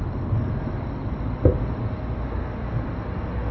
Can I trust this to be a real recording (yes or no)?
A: yes